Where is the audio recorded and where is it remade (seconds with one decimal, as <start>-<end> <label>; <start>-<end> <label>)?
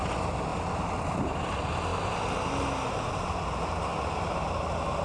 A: 0.0-5.0 recorded